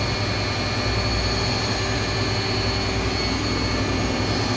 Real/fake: real